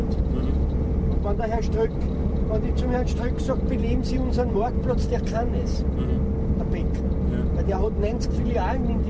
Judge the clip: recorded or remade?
recorded